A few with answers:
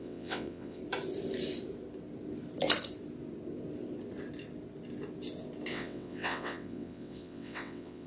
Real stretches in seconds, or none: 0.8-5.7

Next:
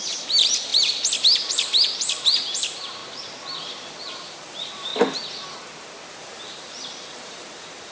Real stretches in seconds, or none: 0.7-1.2; 3.0-4.0; 4.9-6.2